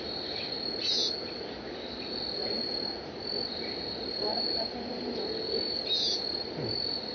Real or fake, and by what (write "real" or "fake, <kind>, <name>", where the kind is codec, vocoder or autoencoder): real